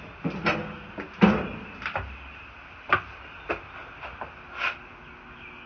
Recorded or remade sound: recorded